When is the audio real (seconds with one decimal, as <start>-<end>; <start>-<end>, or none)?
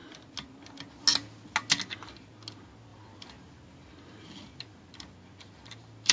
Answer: 0.0-6.1